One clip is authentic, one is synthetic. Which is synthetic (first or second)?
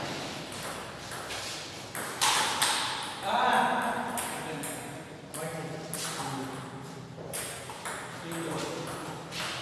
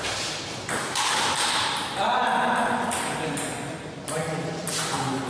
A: second